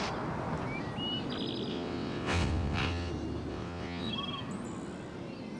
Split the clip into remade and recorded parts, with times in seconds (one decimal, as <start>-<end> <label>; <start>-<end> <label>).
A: 0.0-1.7 recorded; 1.7-3.1 remade; 3.1-3.5 recorded; 3.5-4.1 remade; 4.1-5.6 recorded

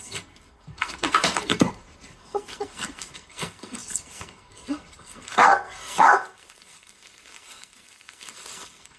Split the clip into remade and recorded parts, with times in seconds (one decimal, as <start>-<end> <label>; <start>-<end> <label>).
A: 0.0-9.0 remade

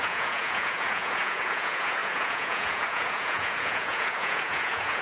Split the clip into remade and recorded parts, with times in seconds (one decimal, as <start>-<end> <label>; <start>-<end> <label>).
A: 0.0-5.0 remade

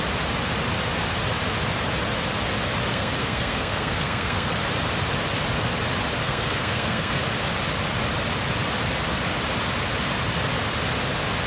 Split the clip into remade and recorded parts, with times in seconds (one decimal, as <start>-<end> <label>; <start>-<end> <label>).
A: 0.0-2.9 recorded; 2.9-4.5 remade; 4.5-6.2 recorded; 6.2-7.2 remade; 7.2-11.5 recorded